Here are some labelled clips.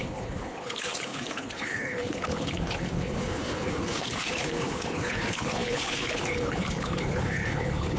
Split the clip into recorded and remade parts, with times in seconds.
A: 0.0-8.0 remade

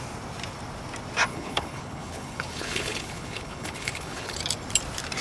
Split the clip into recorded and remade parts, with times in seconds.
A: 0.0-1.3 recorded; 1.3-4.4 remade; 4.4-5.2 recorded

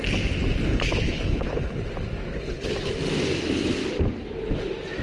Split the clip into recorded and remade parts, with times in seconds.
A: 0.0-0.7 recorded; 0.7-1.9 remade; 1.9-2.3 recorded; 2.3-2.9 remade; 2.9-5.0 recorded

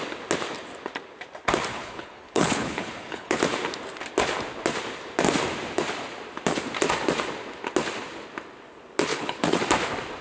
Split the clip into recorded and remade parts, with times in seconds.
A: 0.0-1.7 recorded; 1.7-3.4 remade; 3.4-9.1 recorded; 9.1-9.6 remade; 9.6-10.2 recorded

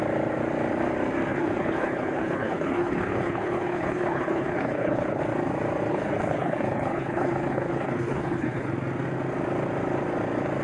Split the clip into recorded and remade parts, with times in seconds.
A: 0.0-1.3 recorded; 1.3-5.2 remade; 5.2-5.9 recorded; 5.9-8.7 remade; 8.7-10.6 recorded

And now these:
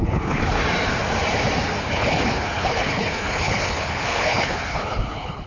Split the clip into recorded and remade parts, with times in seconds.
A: 0.0-0.6 remade; 0.6-1.8 recorded; 1.8-5.5 remade

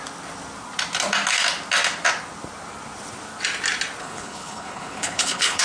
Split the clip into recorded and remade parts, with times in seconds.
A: 0.0-4.0 recorded; 4.0-5.6 remade

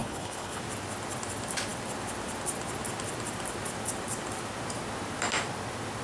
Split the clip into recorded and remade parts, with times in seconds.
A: 0.0-0.6 remade; 0.6-6.0 recorded